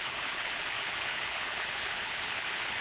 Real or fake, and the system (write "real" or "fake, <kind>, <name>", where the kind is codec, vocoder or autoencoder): fake, codec, HILCodec